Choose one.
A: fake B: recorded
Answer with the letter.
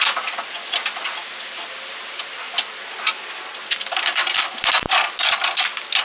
B